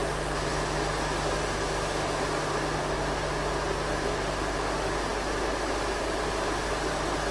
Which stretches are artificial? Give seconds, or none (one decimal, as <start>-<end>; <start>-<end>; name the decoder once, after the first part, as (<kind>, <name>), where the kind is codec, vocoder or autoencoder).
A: none